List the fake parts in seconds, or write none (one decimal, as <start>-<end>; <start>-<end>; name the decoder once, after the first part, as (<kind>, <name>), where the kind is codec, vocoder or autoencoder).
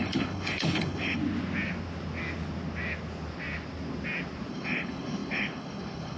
0.0-1.2 (codec, HILCodec); 4.5-6.2